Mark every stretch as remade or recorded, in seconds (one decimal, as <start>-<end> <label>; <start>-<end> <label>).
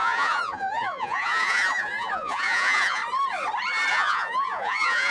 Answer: 0.0-3.0 remade; 3.0-3.9 recorded; 3.9-5.1 remade